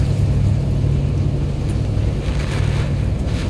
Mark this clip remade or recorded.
recorded